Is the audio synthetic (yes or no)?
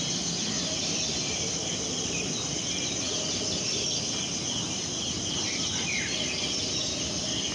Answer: no